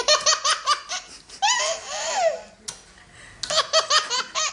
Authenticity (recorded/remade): recorded